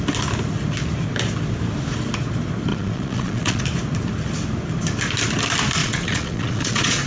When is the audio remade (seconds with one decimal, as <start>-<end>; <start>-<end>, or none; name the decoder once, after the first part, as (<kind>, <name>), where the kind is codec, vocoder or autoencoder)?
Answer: 2.7-3.6 (vocoder, Vocos); 5.8-7.1